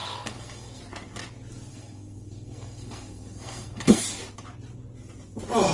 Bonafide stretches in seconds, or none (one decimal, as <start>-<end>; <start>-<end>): 0.8-1.7; 4.0-5.7